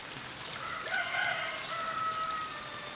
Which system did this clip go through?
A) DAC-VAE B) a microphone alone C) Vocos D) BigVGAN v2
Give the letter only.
D